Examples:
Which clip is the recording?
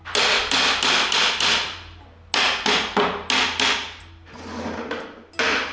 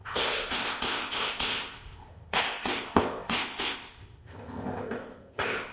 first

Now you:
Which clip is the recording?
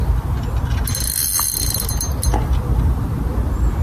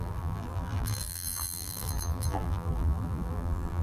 first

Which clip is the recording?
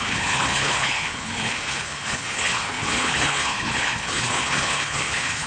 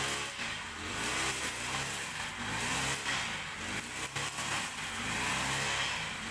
second